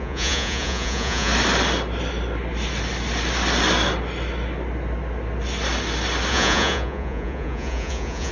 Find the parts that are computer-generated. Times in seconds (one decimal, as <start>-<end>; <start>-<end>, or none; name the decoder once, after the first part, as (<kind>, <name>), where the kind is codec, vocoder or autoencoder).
0.0-1.3 (vocoder, Vocos); 6.3-8.3